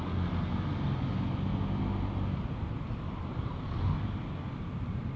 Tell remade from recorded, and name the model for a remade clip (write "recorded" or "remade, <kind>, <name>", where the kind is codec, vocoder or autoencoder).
recorded